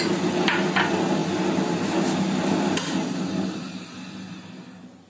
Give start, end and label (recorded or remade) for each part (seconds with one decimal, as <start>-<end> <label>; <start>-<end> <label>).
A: 0.0-5.1 recorded